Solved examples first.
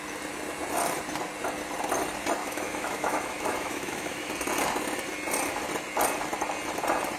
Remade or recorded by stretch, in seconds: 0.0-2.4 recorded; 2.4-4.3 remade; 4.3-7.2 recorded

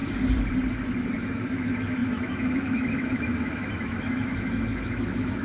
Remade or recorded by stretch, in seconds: 0.0-1.2 recorded; 1.2-5.4 remade

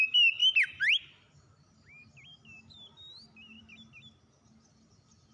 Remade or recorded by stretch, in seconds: 0.0-5.3 recorded

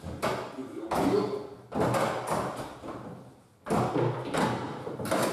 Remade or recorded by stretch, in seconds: 0.0-5.3 recorded

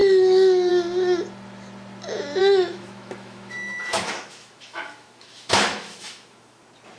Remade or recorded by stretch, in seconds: 0.0-0.7 remade; 0.7-2.4 recorded; 2.4-6.6 remade; 6.6-7.0 recorded